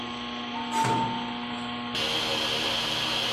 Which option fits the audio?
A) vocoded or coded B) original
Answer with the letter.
B